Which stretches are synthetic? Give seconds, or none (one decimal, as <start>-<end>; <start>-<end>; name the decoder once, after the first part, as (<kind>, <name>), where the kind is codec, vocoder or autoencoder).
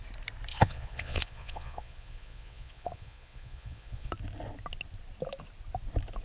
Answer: 0.5-4.1 (vocoder, Vocos)